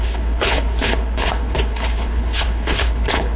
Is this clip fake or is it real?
fake